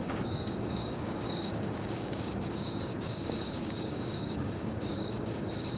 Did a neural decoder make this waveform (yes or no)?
yes